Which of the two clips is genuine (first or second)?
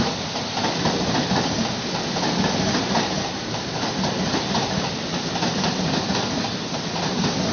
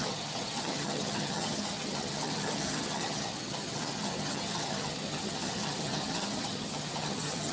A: first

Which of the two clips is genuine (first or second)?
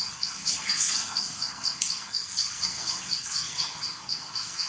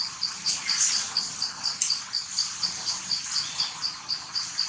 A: second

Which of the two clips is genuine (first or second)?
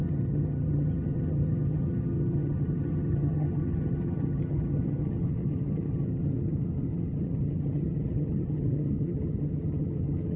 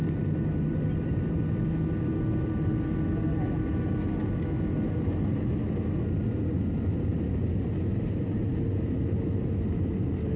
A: second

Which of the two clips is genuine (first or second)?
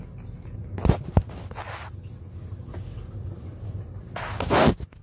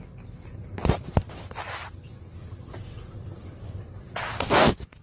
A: first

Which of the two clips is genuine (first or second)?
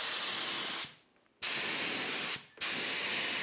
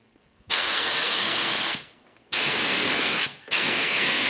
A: first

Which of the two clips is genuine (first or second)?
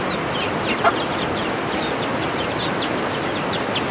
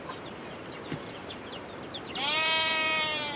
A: first